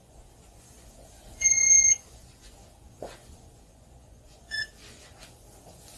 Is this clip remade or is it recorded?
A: remade